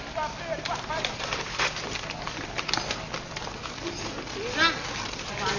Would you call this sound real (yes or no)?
yes